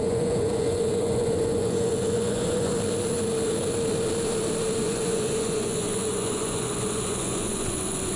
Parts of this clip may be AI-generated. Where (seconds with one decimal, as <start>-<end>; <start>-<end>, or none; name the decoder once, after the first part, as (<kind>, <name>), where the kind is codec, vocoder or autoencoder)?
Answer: 0.0-2.7 (vocoder, Vocos); 4.8-8.2